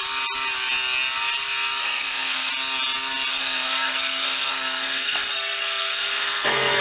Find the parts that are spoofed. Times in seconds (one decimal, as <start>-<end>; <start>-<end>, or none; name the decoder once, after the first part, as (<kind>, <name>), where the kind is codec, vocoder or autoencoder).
1.8-2.5 (codec, SNAC); 3.3-6.8

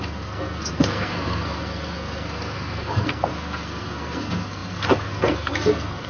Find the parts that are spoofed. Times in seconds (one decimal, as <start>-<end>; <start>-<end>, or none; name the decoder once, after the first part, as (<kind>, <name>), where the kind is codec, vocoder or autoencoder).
0.0-6.1 (codec, SNAC)

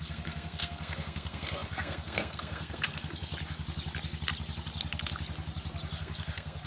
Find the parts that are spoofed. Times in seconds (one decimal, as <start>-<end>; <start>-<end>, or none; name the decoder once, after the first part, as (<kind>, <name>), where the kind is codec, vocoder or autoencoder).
0.0-3.3 (codec, SNAC); 6.0-6.7

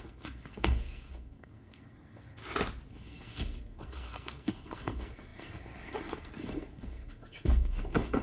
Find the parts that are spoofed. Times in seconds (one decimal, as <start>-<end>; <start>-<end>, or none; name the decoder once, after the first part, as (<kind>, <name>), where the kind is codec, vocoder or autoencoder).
0.0-2.4 (codec, SNAC); 2.9-8.2

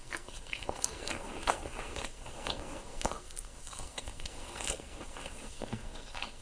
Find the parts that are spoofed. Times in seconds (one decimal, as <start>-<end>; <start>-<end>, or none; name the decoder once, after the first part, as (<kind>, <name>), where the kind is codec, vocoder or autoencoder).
0.0-6.4 (codec, SNAC)

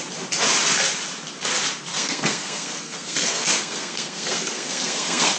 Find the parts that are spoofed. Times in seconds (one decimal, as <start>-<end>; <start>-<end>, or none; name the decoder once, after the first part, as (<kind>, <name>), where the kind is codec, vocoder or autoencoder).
1.9-5.4 (codec, SNAC)

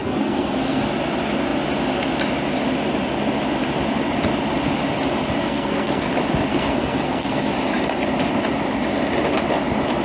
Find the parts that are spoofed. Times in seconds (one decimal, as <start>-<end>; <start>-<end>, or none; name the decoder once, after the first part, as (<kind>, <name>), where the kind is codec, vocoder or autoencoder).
0.0-0.8 (codec, SNAC); 5.4-6.1; 6.5-7.5